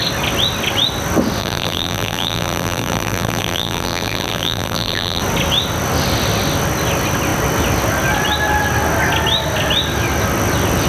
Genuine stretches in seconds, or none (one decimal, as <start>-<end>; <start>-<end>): 0.0-1.4; 5.2-10.9